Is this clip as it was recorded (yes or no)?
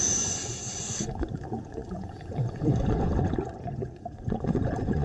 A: no